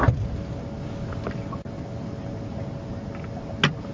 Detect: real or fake real